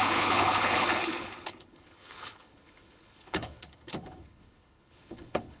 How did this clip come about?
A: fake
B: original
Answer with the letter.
A